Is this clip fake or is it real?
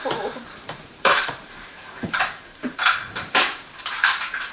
fake